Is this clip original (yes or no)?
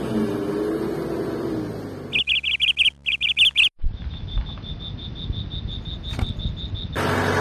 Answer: yes